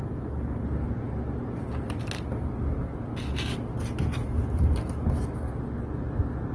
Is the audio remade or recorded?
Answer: recorded